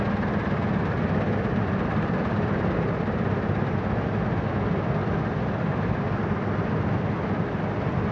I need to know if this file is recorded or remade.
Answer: recorded